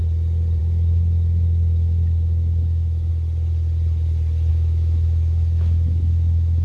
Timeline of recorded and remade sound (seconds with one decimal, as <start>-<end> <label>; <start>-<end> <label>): 0.0-0.6 recorded; 0.6-3.1 remade; 3.1-4.5 recorded; 4.5-6.6 remade